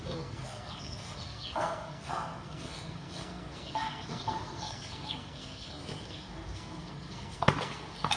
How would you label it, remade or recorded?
remade